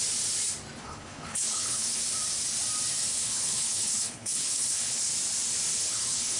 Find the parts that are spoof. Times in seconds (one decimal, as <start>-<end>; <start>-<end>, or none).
0.8-2.0; 3.1-5.1; 5.8-6.4